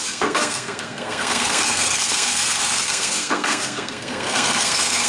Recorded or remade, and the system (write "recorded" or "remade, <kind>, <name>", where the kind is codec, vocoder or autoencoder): remade, codec, SNAC